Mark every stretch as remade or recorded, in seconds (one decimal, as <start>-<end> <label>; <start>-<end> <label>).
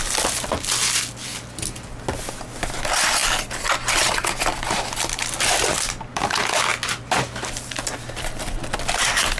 0.0-9.4 recorded